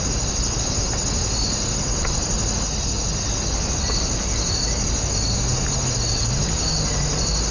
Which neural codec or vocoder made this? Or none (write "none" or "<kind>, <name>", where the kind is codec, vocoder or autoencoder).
none